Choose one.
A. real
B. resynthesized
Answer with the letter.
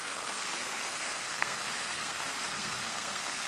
B